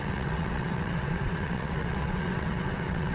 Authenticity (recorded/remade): remade